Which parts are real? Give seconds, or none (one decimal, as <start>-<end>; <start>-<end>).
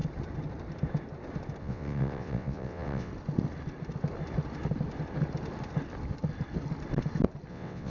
0.0-1.6; 3.1-7.5